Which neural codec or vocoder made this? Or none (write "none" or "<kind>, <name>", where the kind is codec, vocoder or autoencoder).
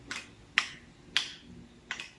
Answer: none